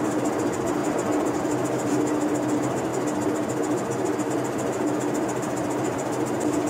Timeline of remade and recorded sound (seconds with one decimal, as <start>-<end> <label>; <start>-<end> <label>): 0.0-6.7 recorded